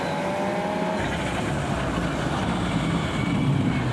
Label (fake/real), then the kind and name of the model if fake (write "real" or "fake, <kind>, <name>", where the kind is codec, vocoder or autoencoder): real